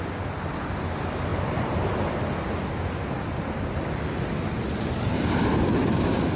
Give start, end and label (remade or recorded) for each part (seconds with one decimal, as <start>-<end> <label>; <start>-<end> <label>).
0.0-1.3 remade; 1.3-5.1 recorded; 5.1-6.4 remade